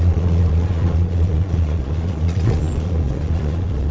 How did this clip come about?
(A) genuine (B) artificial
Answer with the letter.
B